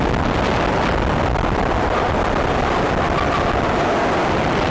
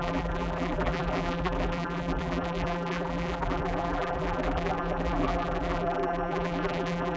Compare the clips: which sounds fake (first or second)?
second